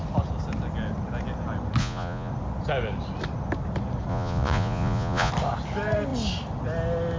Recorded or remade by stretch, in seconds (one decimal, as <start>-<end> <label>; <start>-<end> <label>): 0.0-1.8 recorded; 1.8-2.3 remade; 2.3-4.1 recorded; 4.1-5.3 remade; 5.3-7.2 recorded